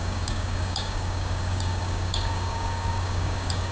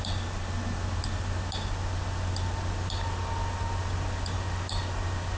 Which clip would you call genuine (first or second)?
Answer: second